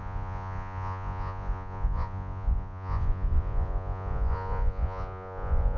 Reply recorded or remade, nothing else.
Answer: remade